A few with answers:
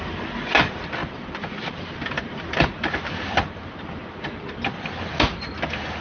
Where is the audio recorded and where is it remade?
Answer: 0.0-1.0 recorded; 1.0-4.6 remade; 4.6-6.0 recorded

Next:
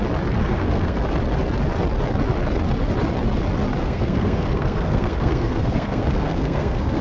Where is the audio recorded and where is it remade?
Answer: 0.0-0.4 recorded; 0.4-1.0 remade; 1.0-3.8 recorded; 3.8-7.0 remade